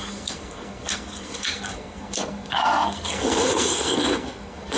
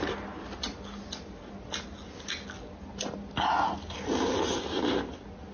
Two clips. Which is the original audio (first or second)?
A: second